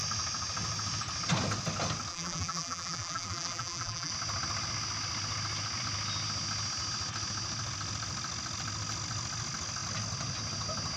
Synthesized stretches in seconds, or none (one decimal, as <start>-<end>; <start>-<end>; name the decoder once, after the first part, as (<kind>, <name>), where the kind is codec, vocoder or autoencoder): 2.1-4.1 (vocoder, BigVGAN v2)